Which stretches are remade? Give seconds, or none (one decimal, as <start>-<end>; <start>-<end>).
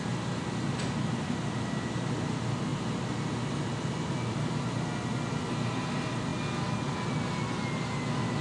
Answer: none